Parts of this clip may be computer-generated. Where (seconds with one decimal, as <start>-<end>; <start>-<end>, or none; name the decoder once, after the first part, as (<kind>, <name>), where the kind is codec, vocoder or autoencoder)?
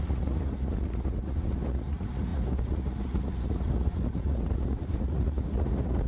0.0-6.1 (vocoder, Vocos)